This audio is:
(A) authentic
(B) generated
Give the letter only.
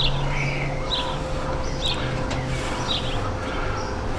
A